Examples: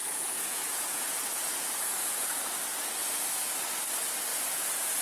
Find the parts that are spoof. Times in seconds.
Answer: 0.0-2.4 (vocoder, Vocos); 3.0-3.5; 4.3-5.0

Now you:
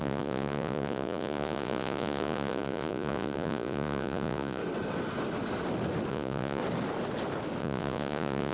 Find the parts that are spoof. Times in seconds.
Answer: 0.0-4.6 (vocoder, Vocos); 6.1-6.6; 7.6-8.5

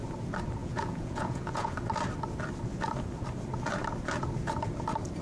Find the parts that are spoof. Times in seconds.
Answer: 0.6-1.7 (vocoder, Vocos)

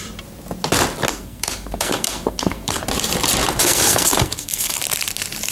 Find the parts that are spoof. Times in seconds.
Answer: 1.1-2.8 (codec, SNAC); 3.6-4.8

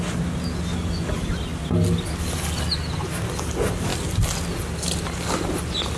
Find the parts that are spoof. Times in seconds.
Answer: none